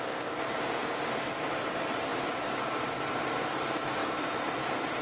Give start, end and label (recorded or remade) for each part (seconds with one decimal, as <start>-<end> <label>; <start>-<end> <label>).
0.0-0.8 recorded; 0.8-1.6 remade; 1.6-4.0 recorded; 4.0-4.6 remade; 4.6-5.0 recorded